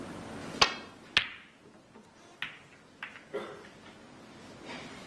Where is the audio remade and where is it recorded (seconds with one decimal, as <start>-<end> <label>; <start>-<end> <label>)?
0.0-5.1 recorded